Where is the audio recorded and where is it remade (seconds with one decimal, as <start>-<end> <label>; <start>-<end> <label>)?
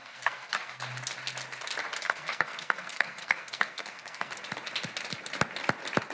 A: 0.0-0.8 remade; 0.8-2.0 recorded; 2.0-4.3 remade; 4.3-6.1 recorded